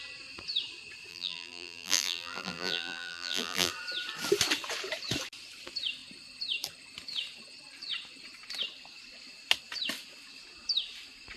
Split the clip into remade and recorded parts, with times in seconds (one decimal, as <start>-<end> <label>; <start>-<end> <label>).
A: 0.0-1.1 recorded; 1.1-3.7 remade; 3.7-11.4 recorded